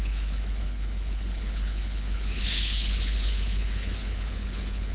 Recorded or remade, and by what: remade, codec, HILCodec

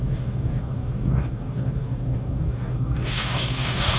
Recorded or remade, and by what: remade, codec, DAC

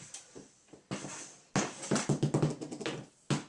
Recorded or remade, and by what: recorded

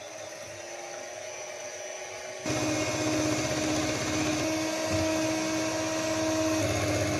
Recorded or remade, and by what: recorded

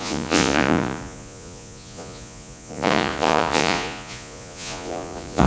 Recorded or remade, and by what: remade, vocoder, Vocos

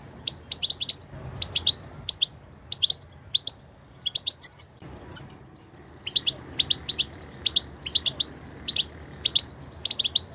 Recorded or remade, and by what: recorded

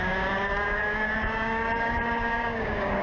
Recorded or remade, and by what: remade, codec, DAC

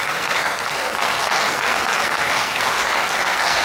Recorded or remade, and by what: remade, codec, SNAC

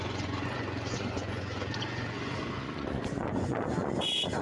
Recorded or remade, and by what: remade, vocoder, Vocos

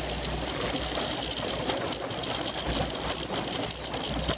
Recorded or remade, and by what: recorded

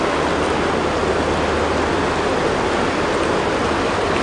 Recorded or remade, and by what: recorded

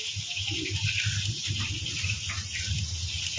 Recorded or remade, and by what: recorded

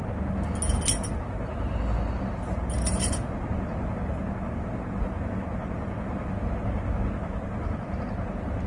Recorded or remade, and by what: recorded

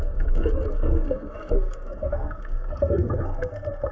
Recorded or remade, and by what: remade, codec, SNAC